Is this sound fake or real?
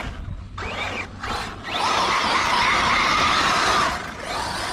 real